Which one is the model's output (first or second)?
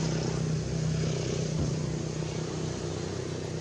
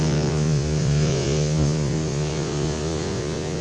second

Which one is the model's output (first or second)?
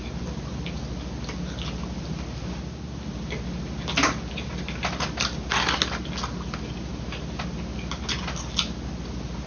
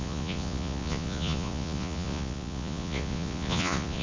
second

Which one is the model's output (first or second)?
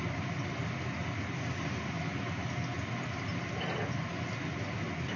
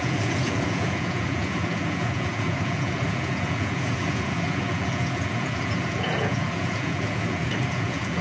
second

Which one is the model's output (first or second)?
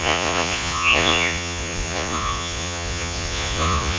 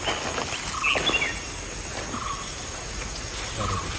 first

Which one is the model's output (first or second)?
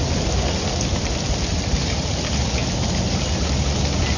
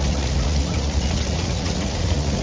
second